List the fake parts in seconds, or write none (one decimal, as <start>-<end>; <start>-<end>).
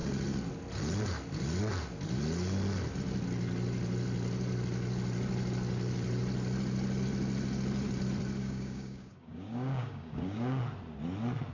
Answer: 8.4-10.6